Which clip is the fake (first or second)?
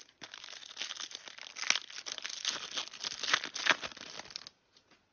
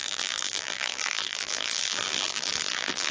second